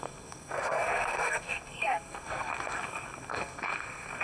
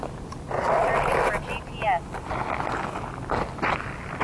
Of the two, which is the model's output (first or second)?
first